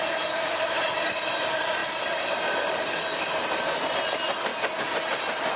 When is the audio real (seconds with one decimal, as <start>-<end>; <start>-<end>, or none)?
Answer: 4.5-5.6